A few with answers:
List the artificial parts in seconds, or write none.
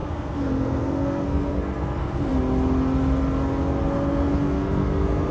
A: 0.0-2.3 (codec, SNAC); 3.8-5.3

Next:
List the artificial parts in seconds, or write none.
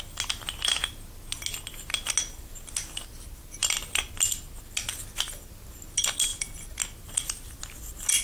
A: none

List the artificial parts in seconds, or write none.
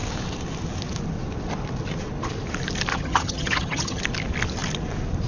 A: 2.9-4.0 (vocoder, HiFi-GAN)